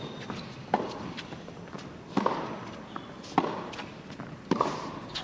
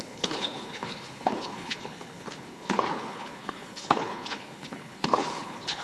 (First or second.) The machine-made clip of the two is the second